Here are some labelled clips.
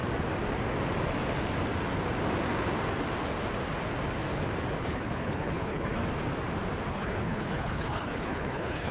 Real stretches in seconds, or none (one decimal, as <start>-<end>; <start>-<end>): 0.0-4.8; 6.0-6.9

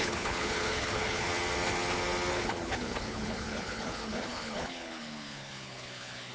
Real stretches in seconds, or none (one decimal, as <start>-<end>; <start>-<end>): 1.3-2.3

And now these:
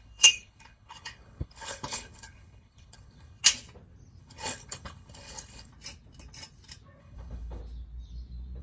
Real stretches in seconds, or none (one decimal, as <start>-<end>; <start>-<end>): 3.4-4.2; 5.7-7.0; 7.6-8.6

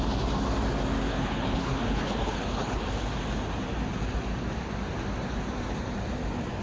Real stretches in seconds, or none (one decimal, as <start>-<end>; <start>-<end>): 0.0-1.1; 2.8-6.6